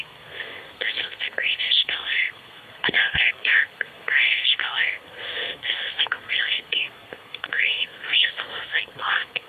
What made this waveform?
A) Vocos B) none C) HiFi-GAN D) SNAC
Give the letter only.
D